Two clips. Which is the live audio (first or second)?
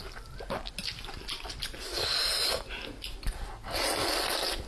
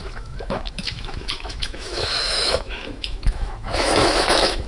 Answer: first